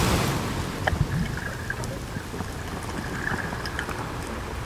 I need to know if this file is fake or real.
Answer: real